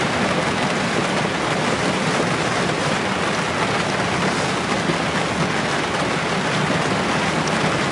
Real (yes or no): yes